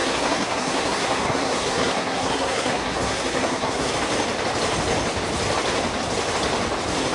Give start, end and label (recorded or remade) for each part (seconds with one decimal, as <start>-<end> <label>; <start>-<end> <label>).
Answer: 0.0-3.9 remade; 3.9-7.1 recorded